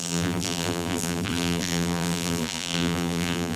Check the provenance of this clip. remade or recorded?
remade